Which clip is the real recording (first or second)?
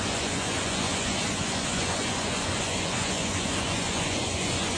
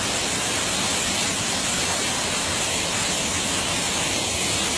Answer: second